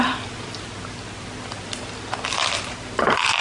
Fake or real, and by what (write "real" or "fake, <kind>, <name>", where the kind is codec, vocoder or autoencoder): real